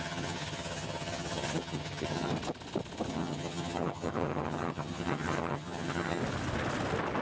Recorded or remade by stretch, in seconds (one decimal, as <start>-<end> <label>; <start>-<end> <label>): 0.0-2.3 remade; 2.3-3.1 recorded; 3.1-6.2 remade; 6.2-7.2 recorded